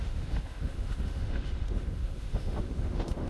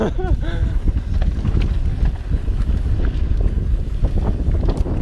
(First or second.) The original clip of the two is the second